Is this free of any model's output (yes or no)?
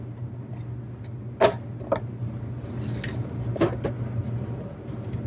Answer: yes